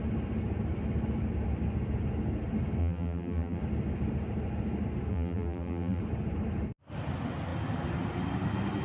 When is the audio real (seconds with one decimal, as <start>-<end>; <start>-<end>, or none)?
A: 0.0-2.8; 3.6-5.1; 6.0-8.8